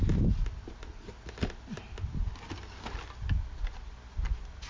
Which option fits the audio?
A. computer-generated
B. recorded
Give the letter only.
B